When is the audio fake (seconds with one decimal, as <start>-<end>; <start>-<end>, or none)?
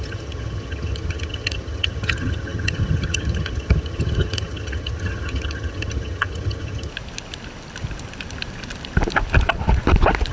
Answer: 0.0-6.9